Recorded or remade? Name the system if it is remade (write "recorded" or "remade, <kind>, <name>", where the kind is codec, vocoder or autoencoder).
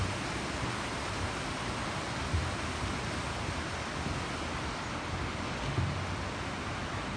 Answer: recorded